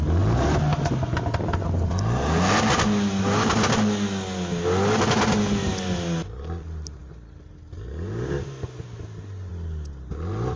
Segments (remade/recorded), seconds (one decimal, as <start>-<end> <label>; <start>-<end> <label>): 0.0-10.6 recorded